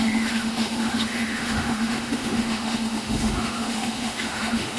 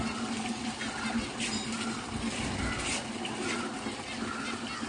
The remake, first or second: first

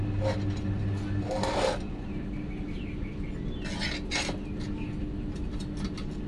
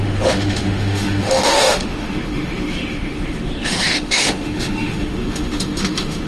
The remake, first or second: second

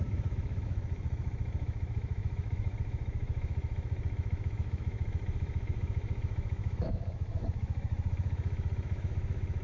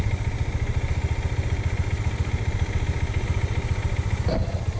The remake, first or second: first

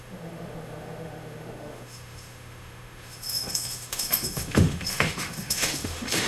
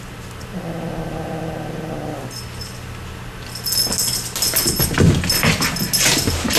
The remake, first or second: first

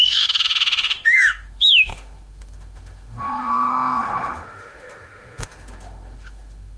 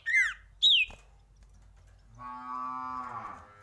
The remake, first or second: first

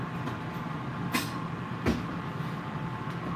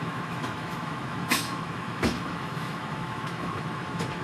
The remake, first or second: second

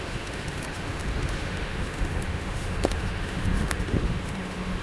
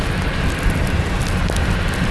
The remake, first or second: first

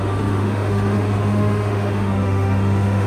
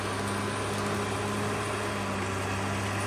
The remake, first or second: first